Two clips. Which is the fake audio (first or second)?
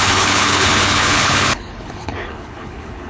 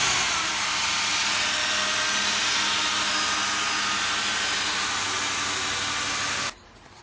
first